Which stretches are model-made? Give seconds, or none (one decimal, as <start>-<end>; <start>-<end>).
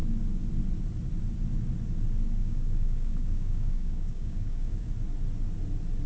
2.4-4.9